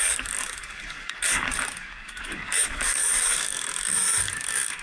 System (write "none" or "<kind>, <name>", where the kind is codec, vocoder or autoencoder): codec, DAC